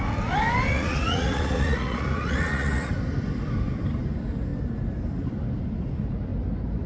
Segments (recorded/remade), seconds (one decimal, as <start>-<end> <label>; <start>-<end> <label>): 0.0-0.7 recorded; 0.7-2.9 remade; 2.9-6.9 recorded

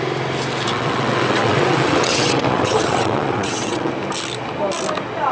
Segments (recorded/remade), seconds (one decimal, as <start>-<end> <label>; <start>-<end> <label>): 0.0-0.7 recorded; 0.7-3.9 remade; 3.9-5.3 recorded

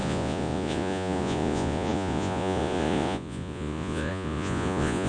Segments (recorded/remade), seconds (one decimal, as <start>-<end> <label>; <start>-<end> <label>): 0.0-5.1 remade

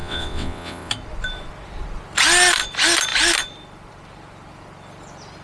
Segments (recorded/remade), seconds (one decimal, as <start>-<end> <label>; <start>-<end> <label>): 0.0-0.9 remade; 0.9-5.4 recorded

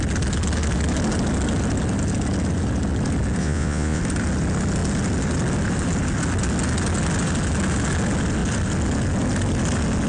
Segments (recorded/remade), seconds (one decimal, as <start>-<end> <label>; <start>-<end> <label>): 0.0-3.4 recorded; 3.4-4.0 remade; 4.0-10.1 recorded